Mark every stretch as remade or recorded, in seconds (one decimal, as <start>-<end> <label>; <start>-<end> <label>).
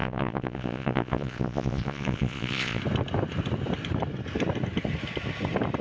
0.0-2.8 remade; 2.8-5.8 recorded